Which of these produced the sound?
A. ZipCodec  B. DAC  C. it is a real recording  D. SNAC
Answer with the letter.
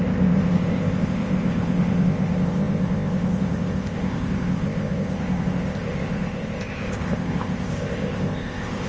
A